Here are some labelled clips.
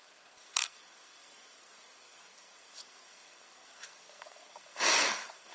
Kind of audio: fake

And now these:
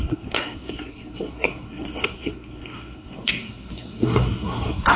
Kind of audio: fake